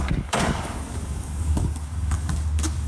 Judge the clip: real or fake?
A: fake